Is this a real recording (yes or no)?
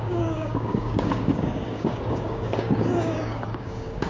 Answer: no